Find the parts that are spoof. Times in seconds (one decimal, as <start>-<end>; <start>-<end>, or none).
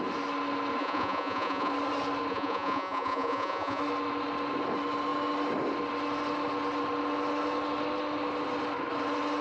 0.8-1.7; 2.3-3.8